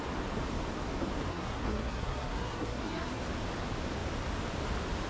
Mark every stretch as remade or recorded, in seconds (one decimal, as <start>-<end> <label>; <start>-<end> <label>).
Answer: 0.0-1.3 recorded; 1.3-3.2 remade; 3.2-5.1 recorded